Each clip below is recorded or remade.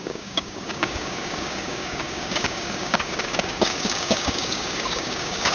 remade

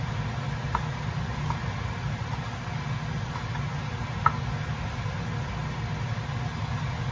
recorded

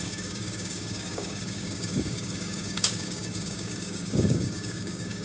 remade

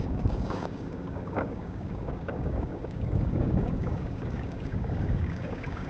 remade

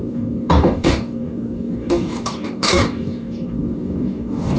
remade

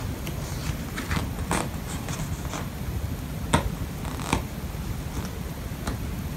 recorded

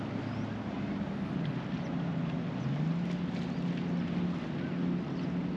recorded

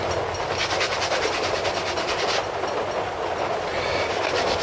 recorded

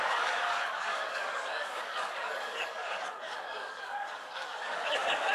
remade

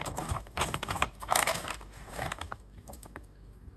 remade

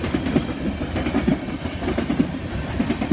recorded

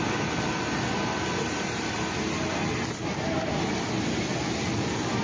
recorded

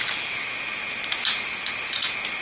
recorded